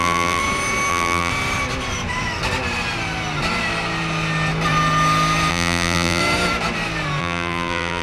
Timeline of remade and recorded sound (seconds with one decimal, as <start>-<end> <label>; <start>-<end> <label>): 0.0-0.4 remade; 0.4-0.9 recorded; 0.9-1.3 remade; 1.3-5.5 recorded; 5.5-6.2 remade; 6.2-7.2 recorded; 7.2-8.0 remade